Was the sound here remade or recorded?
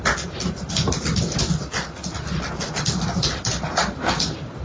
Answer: recorded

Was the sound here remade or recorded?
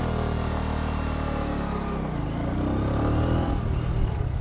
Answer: recorded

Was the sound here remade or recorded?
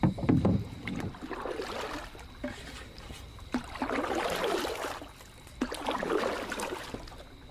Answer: recorded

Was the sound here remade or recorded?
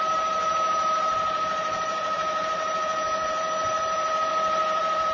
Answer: remade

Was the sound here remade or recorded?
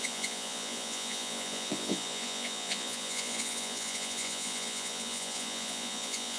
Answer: remade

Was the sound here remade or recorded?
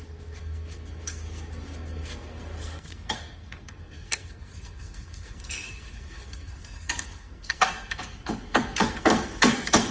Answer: remade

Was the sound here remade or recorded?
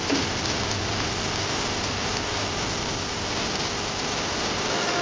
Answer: recorded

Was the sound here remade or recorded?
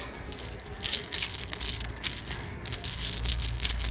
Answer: remade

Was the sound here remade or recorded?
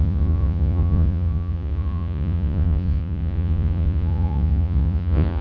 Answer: remade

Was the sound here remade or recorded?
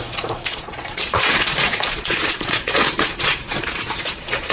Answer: remade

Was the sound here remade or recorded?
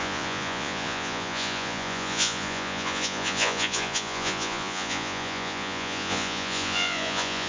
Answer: remade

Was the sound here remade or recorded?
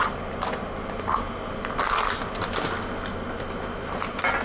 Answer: recorded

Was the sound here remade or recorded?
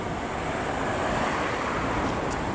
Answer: recorded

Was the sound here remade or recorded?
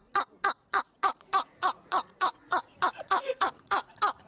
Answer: remade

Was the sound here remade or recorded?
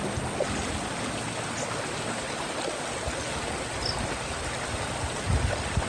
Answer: recorded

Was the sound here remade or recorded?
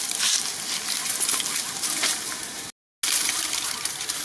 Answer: recorded